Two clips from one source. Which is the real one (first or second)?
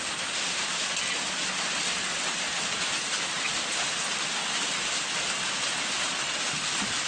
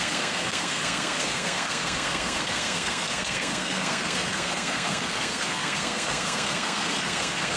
first